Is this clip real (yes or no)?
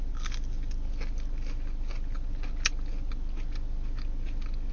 yes